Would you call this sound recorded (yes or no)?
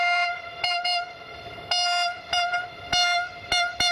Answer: yes